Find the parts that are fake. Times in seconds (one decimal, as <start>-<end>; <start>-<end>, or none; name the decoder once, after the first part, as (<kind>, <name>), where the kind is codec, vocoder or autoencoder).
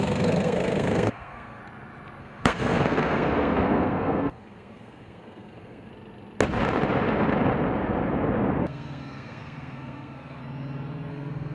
0.0-1.6 (codec, SNAC); 2.2-5.9; 8.6-10.4; 11.1-11.5